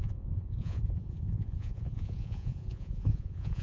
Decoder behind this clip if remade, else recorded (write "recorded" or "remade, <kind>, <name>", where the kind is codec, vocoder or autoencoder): remade, vocoder, Vocos